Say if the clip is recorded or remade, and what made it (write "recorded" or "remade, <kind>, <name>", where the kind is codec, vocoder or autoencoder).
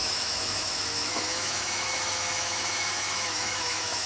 remade, autoencoder, DAC-VAE